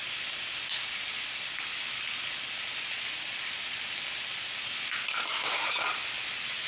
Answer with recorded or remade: recorded